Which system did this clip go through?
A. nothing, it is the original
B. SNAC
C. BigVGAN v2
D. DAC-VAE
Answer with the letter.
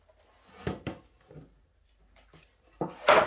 A